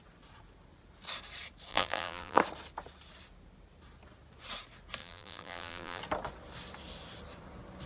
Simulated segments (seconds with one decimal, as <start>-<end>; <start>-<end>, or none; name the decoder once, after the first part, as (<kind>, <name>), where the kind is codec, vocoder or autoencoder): 1.7-2.4 (vocoder, BigVGAN v2); 5.0-6.0

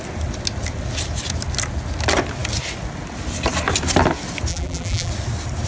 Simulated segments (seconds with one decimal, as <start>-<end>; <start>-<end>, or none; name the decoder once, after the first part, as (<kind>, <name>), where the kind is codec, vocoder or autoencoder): 4.5-5.1 (vocoder, BigVGAN v2)

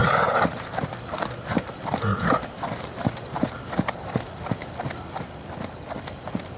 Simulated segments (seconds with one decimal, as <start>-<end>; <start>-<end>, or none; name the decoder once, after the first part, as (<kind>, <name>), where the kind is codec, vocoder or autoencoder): 0.0-0.9 (vocoder, BigVGAN v2); 2.1-4.7

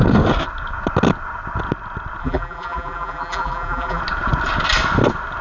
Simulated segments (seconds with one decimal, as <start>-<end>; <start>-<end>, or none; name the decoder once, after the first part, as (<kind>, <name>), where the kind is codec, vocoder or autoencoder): 2.2-4.0 (vocoder, BigVGAN v2)

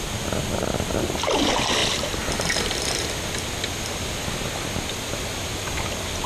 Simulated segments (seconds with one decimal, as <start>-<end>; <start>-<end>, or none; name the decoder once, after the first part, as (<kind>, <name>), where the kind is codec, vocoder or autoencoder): none